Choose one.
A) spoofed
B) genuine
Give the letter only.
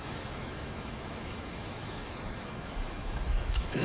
A